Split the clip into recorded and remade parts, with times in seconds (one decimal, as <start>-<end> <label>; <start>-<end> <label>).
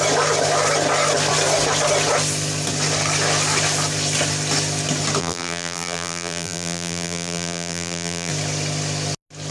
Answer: 0.0-5.2 recorded; 5.2-8.3 remade; 8.3-9.5 recorded